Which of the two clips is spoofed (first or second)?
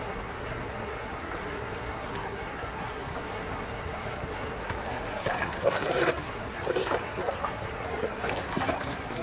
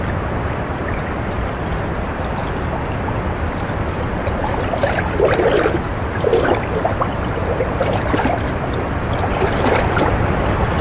first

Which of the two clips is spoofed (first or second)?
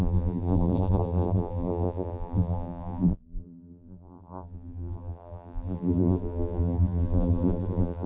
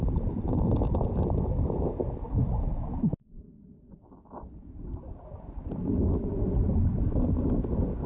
first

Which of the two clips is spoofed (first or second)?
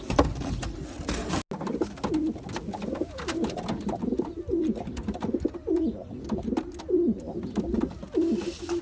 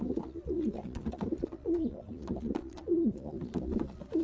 second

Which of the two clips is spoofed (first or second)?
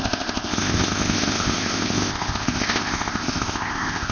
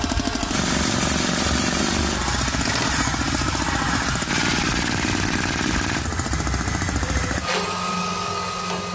first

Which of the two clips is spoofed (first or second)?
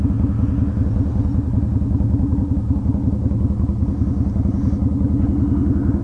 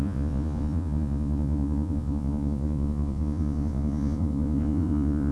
second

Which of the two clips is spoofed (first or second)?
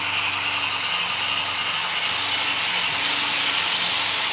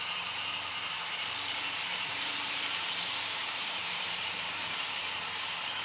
second